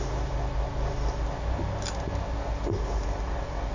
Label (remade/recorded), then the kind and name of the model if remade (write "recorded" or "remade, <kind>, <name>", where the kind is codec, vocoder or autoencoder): recorded